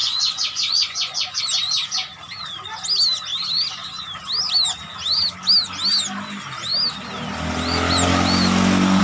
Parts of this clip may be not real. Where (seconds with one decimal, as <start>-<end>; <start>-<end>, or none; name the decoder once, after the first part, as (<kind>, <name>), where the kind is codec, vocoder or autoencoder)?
0.0-1.4 (vocoder, Vocos)